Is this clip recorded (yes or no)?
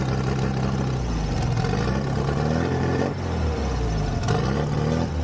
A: yes